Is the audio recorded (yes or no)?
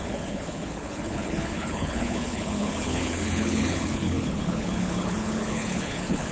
no